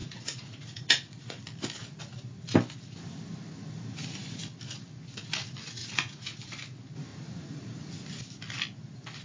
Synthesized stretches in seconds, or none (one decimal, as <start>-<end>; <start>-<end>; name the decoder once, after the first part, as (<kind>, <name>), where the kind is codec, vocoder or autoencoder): 0.0-1.4 (vocoder, Vocos); 5.8-6.5; 7.1-7.9